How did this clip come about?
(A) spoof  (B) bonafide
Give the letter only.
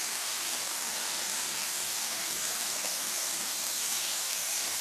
A